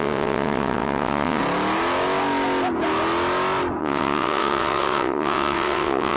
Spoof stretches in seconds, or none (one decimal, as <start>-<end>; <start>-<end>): 0.0-1.4; 3.8-6.2